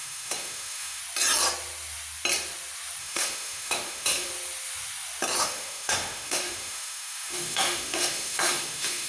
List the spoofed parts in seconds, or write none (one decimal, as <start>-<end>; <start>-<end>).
0.0-1.0; 3.0-4.3; 5.4-9.1

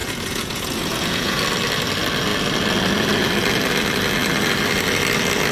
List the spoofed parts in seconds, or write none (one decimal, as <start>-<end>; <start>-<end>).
0.0-1.4

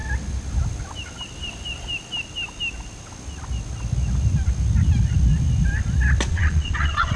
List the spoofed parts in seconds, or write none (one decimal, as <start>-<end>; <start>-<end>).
6.3-7.2

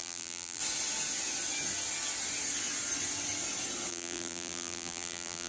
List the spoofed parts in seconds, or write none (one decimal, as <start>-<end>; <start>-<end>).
0.0-0.6; 3.9-5.5